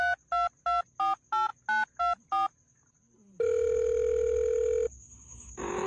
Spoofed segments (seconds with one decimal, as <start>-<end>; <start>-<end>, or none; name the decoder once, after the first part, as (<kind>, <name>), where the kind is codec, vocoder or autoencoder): none